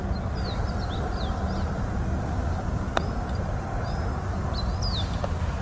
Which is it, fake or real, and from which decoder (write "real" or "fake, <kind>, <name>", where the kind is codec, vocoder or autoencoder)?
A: real